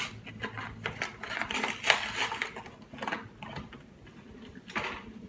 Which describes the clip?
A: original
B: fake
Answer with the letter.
A